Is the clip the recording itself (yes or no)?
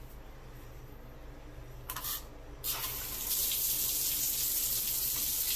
yes